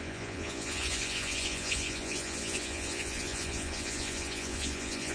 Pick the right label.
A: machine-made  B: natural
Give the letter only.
A